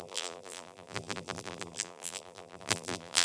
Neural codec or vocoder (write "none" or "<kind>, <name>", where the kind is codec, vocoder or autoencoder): vocoder, BigVGAN v2